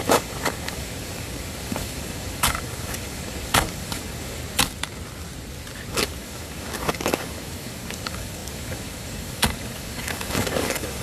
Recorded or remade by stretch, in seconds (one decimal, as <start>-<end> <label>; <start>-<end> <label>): 0.0-4.4 remade; 4.4-5.9 recorded; 5.9-11.0 remade